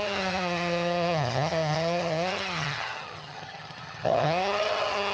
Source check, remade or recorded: remade